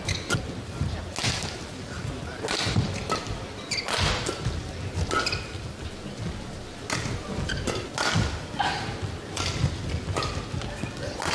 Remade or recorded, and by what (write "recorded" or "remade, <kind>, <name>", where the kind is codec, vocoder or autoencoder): recorded